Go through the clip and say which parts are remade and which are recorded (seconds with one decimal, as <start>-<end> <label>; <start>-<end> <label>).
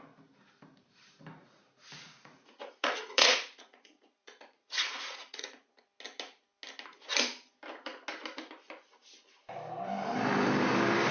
0.0-1.4 recorded; 1.4-5.7 remade; 5.7-11.1 recorded